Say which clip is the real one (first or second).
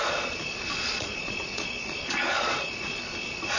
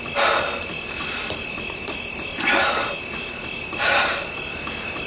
second